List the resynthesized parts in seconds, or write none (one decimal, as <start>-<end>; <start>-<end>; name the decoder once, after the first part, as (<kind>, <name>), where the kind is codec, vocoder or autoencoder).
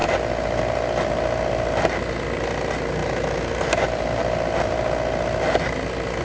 none